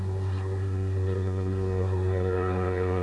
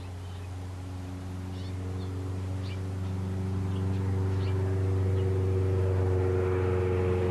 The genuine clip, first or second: second